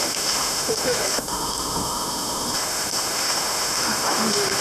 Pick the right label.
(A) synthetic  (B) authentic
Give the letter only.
A